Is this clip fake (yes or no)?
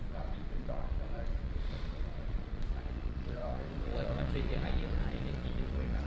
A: yes